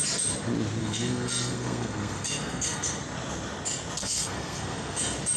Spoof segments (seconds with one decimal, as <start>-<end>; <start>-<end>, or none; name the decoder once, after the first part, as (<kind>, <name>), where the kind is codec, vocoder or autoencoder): 0.8-3.0 (codec, SNAC); 4.0-5.0